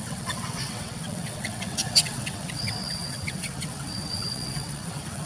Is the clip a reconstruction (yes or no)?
yes